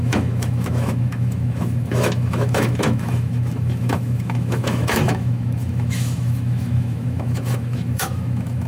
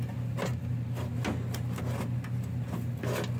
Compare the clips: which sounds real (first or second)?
second